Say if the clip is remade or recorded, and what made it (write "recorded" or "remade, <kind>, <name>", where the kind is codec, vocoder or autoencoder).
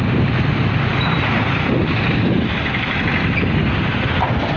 recorded